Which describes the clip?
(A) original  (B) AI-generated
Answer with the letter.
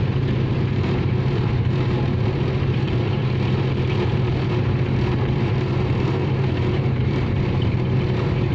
B